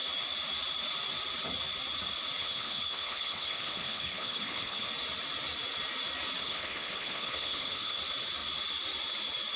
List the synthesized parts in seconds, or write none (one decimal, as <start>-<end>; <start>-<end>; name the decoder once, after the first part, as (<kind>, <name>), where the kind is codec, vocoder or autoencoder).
2.4-4.9 (codec, HILCodec); 6.4-8.0